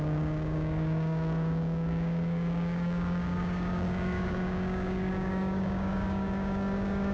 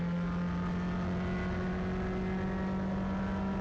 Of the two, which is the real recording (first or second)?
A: second